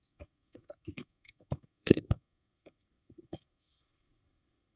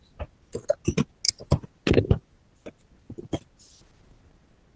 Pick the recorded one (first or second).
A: second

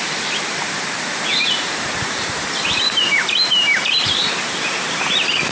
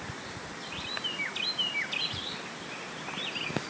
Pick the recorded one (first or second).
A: second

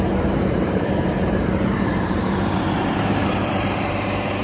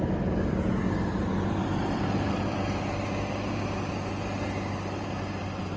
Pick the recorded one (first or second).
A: second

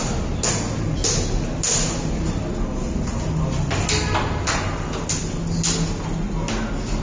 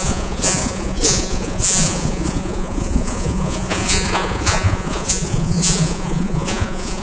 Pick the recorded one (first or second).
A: first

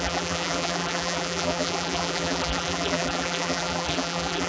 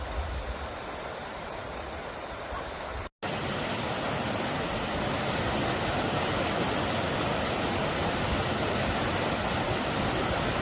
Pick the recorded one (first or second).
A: second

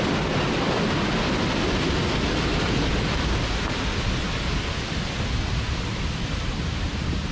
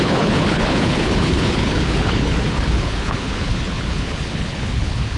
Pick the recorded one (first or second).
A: first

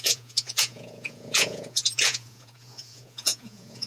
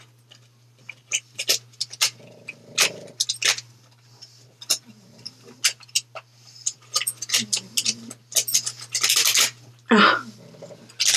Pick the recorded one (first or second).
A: second